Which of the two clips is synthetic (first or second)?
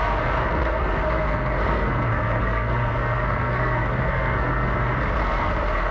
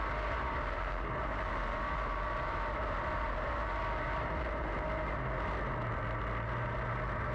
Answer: first